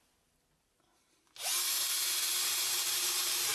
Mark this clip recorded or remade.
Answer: recorded